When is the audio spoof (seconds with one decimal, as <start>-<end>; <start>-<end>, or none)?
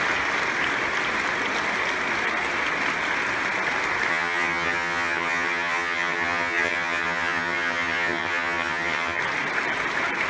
4.1-9.2